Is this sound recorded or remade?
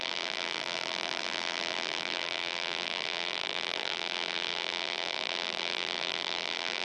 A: remade